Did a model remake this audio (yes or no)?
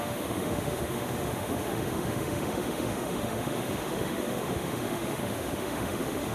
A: yes